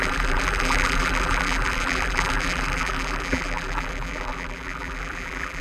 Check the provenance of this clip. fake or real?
fake